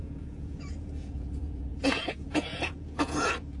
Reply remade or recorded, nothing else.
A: remade